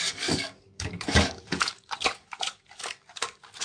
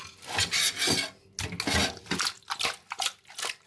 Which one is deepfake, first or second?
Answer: first